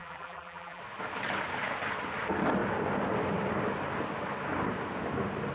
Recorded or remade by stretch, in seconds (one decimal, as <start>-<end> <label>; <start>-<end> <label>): 0.0-0.8 remade; 0.8-5.5 recorded